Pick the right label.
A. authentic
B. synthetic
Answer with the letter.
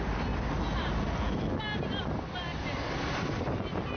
A